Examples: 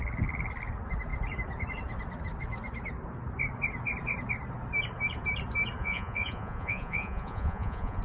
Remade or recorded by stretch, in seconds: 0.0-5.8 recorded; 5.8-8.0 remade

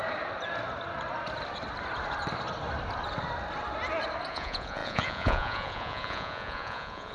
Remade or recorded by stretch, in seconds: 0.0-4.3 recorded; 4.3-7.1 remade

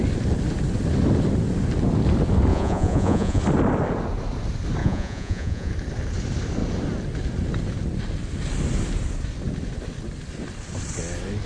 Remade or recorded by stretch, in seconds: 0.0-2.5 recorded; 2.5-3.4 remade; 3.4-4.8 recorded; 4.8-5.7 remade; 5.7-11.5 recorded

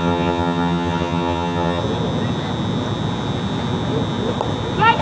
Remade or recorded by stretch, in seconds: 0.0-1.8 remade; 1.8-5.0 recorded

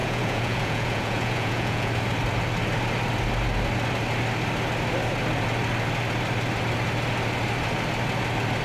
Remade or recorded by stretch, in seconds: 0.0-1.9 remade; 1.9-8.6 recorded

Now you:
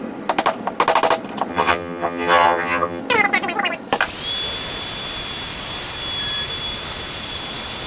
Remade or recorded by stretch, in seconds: 0.0-1.5 recorded; 1.5-3.0 remade; 3.0-7.9 recorded

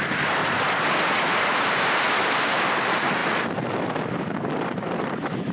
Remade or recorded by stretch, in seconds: 0.0-0.4 remade; 0.4-1.4 recorded; 1.4-3.2 remade; 3.2-4.1 recorded; 4.1-5.5 remade